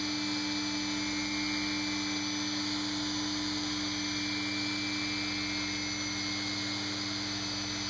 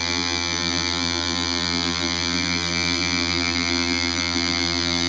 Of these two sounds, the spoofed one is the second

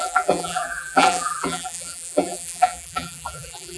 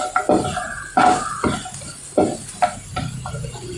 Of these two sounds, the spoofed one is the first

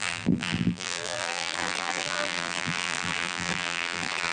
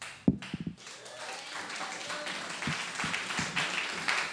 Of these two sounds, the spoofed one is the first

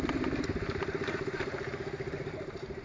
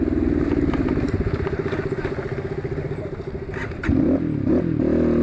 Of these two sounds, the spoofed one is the first